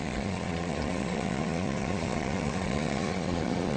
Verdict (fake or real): fake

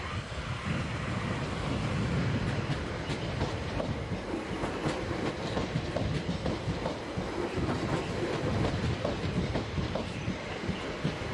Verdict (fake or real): fake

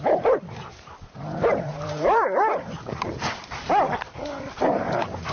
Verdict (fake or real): fake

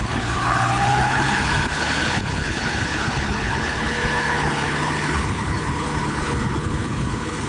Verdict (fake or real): fake